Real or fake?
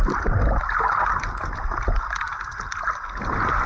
real